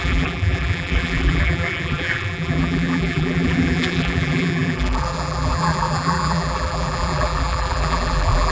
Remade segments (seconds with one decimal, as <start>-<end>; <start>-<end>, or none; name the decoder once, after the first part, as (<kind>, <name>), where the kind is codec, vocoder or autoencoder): 0.0-8.5 (vocoder, BigVGAN v2)